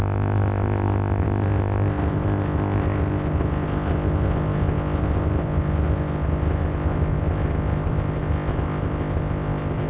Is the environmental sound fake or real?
fake